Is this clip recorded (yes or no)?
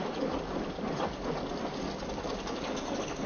yes